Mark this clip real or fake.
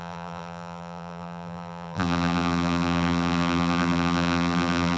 fake